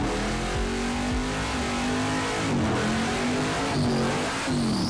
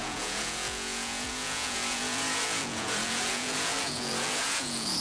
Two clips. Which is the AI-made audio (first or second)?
second